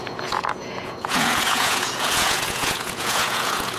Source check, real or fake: fake